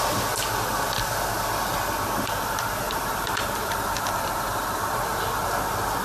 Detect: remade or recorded recorded